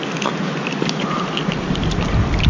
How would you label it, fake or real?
real